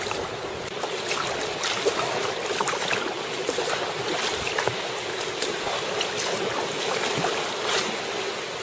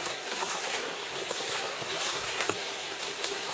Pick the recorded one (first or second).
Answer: first